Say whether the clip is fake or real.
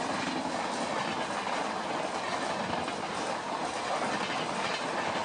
real